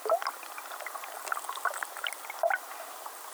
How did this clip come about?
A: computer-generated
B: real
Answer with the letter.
B